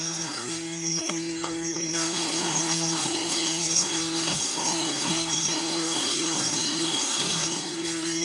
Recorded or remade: remade